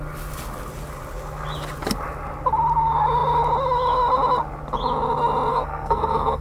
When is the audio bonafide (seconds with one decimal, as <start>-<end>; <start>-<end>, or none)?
0.0-5.5